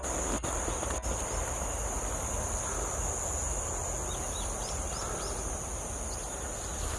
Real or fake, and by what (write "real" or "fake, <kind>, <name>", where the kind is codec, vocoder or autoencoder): real